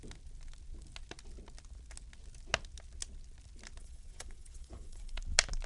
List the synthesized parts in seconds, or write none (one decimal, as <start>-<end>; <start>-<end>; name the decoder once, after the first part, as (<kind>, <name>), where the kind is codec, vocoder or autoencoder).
3.8-5.2 (vocoder, Vocos)